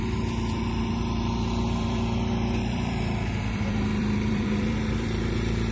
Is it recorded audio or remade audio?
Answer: remade